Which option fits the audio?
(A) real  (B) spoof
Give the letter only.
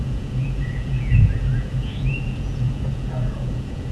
B